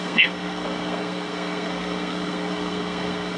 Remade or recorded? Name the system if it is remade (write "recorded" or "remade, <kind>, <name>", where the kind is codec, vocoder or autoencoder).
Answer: remade, codec, SNAC